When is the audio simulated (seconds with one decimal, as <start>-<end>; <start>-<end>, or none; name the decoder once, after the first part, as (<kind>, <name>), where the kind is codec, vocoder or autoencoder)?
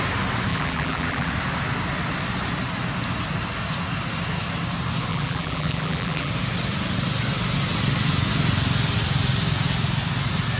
0.5-1.3 (vocoder, BigVGAN v2); 5.1-6.3